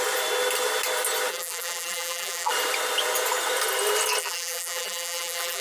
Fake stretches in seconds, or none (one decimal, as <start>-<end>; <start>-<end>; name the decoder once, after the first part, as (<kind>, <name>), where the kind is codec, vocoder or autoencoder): 1.3-2.5 (vocoder, BigVGAN v2); 4.2-5.6